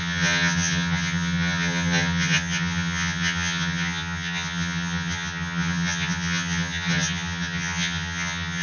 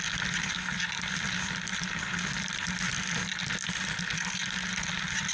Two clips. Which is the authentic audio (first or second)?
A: second